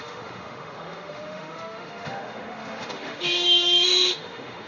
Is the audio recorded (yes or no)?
no